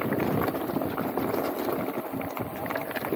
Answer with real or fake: fake